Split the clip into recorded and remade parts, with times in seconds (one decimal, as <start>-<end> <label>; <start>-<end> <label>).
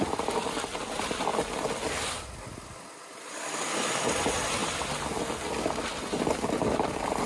0.0-1.3 remade; 1.3-3.3 recorded; 3.3-4.6 remade; 4.6-6.0 recorded; 6.0-7.3 remade